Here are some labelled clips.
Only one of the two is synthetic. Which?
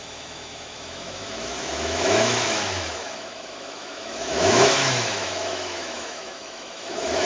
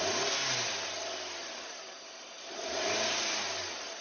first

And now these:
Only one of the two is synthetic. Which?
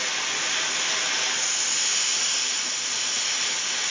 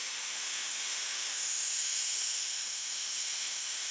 second